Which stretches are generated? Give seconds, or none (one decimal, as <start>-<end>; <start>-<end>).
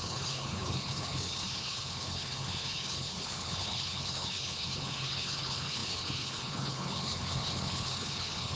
0.0-8.6